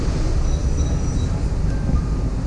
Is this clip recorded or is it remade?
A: recorded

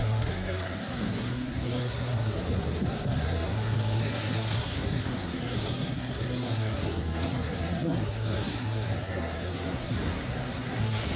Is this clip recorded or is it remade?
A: remade